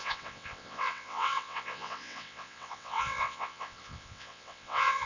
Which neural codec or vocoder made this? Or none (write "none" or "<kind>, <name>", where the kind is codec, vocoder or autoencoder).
vocoder, WaveNeXt